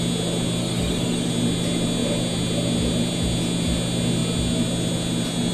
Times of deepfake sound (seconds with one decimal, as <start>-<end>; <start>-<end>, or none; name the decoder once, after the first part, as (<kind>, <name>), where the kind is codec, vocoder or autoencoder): 0.6-1.3 (codec, DAC)